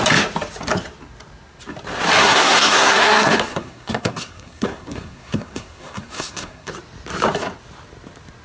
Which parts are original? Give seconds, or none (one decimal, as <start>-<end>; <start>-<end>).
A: 0.0-2.2; 6.7-8.4